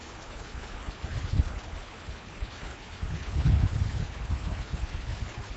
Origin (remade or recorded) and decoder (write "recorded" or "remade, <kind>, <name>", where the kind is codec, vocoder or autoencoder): remade, codec, HILCodec